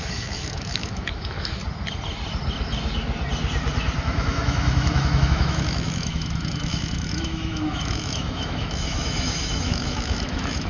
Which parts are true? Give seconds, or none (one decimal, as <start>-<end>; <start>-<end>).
1.6-4.0